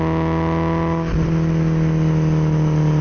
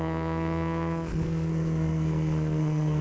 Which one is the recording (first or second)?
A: first